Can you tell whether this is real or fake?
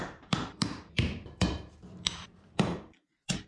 fake